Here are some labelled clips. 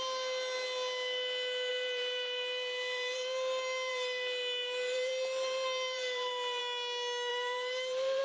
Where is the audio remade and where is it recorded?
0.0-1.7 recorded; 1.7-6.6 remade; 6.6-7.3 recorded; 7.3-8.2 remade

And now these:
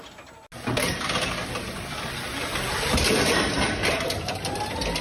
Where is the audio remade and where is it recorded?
0.0-0.9 recorded; 0.9-3.9 remade; 3.9-5.0 recorded

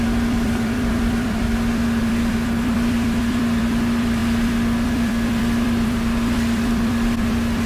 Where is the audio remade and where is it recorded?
0.0-7.7 remade

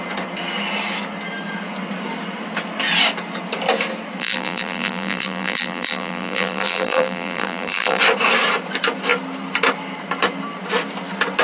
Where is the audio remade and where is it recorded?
0.0-4.2 recorded; 4.2-8.0 remade; 8.0-11.4 recorded

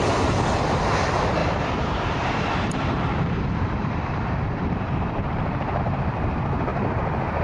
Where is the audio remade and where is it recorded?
0.0-1.4 recorded; 1.4-5.8 remade; 5.8-6.7 recorded; 6.7-7.4 remade

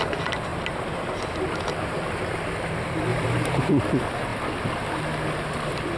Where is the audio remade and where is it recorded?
0.0-0.5 recorded; 0.5-2.0 remade; 2.0-3.1 recorded; 3.1-3.7 remade; 3.7-6.0 recorded

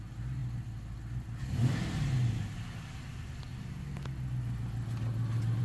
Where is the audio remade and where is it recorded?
0.0-5.6 recorded

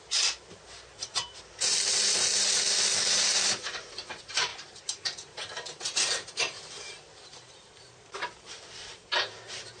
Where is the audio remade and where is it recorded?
0.0-9.8 remade